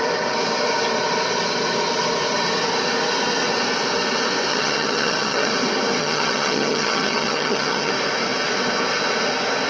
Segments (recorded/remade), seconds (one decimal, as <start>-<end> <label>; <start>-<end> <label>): 0.0-4.5 recorded; 4.5-5.5 remade; 5.5-6.0 recorded; 6.0-7.9 remade; 7.9-9.7 recorded

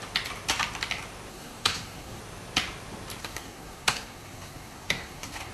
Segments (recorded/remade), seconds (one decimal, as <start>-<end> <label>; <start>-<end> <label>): 0.0-1.3 recorded; 1.3-2.2 remade; 2.2-3.2 recorded; 3.2-5.5 remade